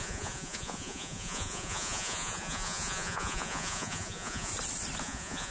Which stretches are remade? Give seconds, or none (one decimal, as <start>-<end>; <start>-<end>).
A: 0.0-4.5; 5.0-5.5